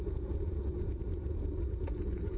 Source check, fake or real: fake